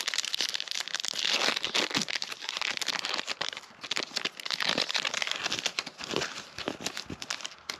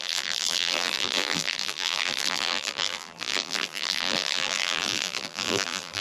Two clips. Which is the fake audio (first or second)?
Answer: second